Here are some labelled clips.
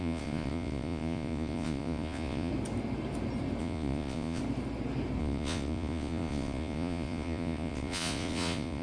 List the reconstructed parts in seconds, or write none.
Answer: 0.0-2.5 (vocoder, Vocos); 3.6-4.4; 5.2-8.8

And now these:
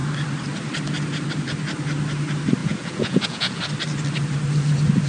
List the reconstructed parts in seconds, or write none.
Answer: 2.6-3.6 (vocoder, Vocos)